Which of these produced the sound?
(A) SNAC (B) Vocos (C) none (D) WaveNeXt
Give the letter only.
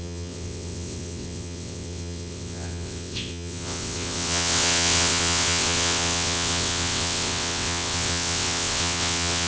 D